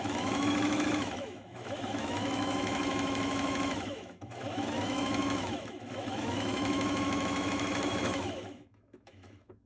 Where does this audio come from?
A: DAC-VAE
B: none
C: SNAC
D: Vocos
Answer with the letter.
A